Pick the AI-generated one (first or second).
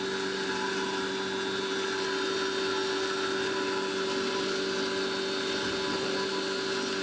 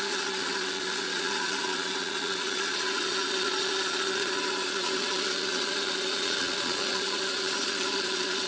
second